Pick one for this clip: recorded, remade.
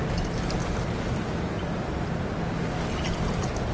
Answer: recorded